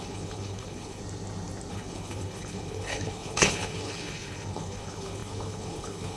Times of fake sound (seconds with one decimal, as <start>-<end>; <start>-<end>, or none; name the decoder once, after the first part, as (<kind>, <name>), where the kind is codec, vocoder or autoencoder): 0.0-1.0 (codec, HILCodec); 1.7-6.2